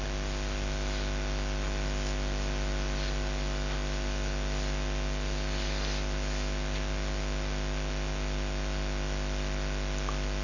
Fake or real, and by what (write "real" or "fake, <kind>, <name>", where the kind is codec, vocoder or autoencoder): real